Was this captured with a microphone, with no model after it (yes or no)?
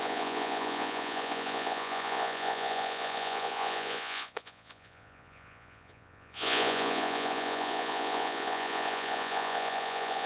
no